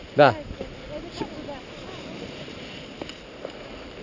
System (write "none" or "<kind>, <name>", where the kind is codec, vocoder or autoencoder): none